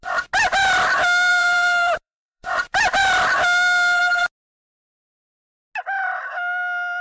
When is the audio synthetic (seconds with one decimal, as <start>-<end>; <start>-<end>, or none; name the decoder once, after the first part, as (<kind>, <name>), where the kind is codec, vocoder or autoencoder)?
1.3-3.0 (vocoder, BigVGAN v2)